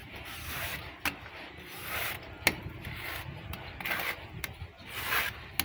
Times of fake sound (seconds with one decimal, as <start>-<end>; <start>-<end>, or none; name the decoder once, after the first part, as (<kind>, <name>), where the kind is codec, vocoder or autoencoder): 0.0-1.0 (vocoder, BigVGAN v2)